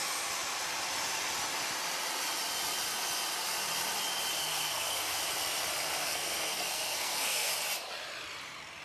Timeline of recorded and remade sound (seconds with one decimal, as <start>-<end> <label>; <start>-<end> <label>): 0.0-4.4 recorded; 4.4-5.2 remade; 5.2-6.0 recorded; 6.0-7.5 remade; 7.5-8.8 recorded